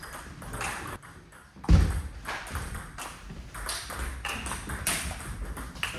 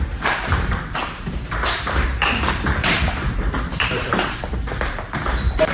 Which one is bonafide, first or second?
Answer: first